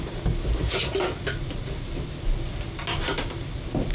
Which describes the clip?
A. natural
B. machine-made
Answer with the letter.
A